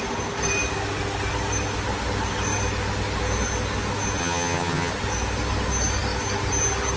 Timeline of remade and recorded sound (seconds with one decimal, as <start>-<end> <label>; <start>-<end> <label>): 0.0-4.2 recorded; 4.2-4.9 remade; 4.9-7.0 recorded